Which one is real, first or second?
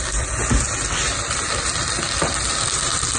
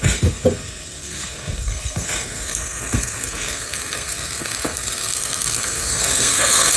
first